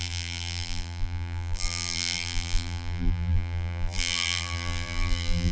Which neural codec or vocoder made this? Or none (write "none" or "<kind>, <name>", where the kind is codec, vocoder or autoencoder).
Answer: vocoder, BigVGAN v2